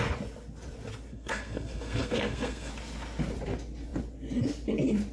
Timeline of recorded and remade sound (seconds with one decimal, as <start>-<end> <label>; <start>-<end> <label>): 0.0-1.1 recorded; 1.1-2.7 remade; 2.7-5.1 recorded